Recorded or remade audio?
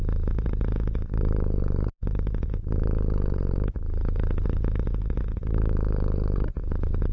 remade